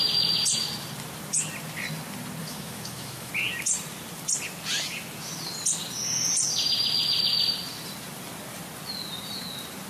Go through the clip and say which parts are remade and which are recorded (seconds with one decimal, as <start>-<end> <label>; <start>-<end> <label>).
0.0-2.4 recorded; 2.4-3.3 remade; 3.3-9.9 recorded